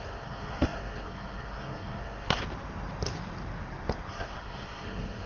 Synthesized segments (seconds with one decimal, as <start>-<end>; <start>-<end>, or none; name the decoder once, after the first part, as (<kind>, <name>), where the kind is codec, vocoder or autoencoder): 0.0-2.4 (codec, SNAC); 4.1-5.3